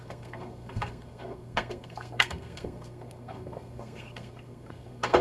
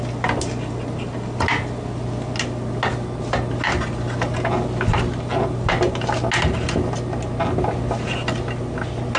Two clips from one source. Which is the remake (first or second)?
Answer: first